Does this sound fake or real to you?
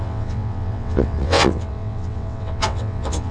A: fake